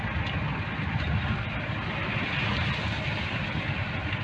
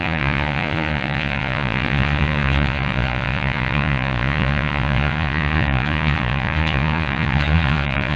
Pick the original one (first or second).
first